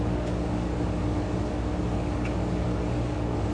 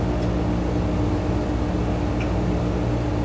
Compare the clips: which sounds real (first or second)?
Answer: second